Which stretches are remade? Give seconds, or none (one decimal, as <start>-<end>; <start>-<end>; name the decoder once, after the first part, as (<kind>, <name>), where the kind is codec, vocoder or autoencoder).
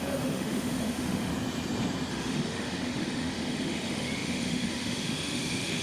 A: 0.0-1.3 (autoencoder, DAC-VAE); 2.1-5.8